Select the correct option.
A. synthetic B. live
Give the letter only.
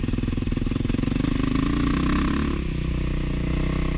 B